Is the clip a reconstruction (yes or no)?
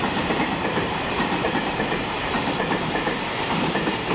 yes